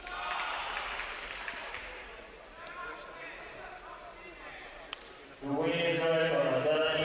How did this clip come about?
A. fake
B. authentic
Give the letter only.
B